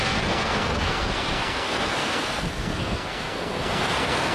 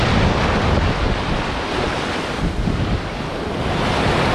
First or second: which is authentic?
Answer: second